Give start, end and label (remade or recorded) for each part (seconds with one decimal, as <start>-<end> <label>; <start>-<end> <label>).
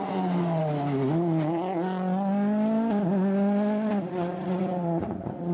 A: 0.0-0.6 remade; 0.6-3.9 recorded; 3.9-5.5 remade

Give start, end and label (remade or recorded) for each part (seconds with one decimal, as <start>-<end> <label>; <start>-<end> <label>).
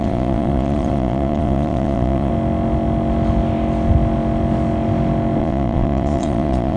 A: 0.0-2.3 remade; 2.3-5.4 recorded; 5.4-6.8 remade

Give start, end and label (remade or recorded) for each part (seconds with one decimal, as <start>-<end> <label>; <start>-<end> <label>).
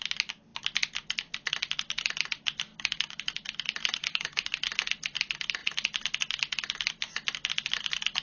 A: 0.0-2.7 recorded; 2.7-3.2 remade; 3.2-4.0 recorded; 4.0-4.5 remade; 4.5-8.2 recorded